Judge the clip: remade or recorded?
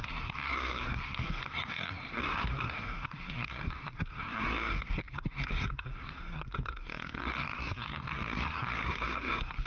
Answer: remade